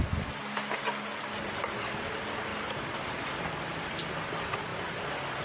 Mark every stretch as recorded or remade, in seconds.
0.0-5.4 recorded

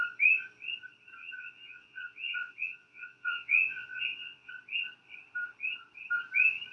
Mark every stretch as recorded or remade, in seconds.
0.0-1.2 recorded; 1.2-4.5 remade; 4.5-6.7 recorded

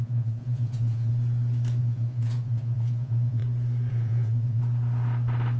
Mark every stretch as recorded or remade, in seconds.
0.0-1.1 remade; 1.1-1.8 recorded; 1.8-3.4 remade; 3.4-3.9 recorded; 3.9-4.6 remade; 4.6-5.6 recorded

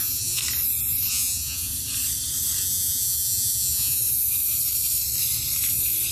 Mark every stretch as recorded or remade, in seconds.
0.0-0.4 remade; 0.4-1.1 recorded; 1.1-1.7 remade; 1.7-2.6 recorded; 2.6-4.0 remade; 4.0-6.1 recorded

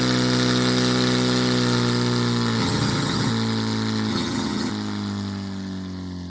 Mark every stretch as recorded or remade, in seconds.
0.0-2.6 recorded; 2.6-3.3 remade; 3.3-4.1 recorded; 4.1-4.7 remade; 4.7-6.3 recorded